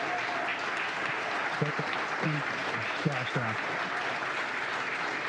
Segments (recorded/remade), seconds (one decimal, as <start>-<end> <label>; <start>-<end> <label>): 0.0-5.3 recorded